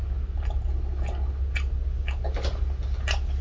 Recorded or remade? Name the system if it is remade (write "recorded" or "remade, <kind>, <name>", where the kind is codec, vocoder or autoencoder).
recorded